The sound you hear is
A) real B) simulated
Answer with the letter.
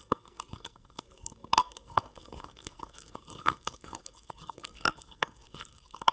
B